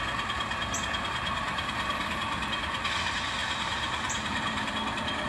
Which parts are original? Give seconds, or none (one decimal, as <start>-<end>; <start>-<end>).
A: 0.0-3.4; 4.7-5.3